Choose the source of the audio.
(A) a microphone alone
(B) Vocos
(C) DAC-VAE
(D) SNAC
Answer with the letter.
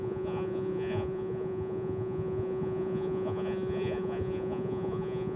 B